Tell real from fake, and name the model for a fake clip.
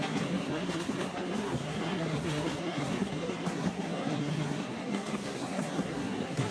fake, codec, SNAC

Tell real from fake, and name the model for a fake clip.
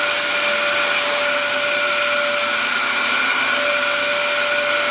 real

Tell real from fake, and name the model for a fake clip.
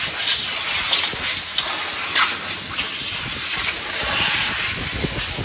real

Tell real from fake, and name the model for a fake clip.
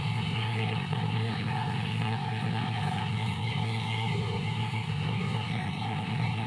fake, codec, SNAC